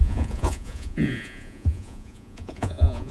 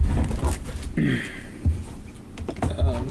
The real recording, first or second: second